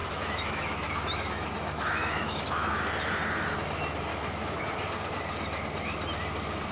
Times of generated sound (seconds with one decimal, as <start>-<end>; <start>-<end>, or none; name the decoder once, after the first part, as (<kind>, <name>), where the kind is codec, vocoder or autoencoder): 0.0-2.7 (autoencoder, DAC-VAE); 4.1-4.6